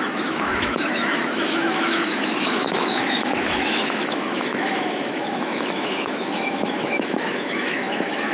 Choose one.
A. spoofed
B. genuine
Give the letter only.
A